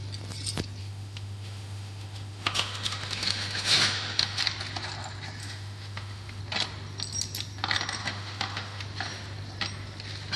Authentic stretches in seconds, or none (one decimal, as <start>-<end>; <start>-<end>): 0.0-0.8; 4.4-5.4; 6.4-8.0; 8.8-10.4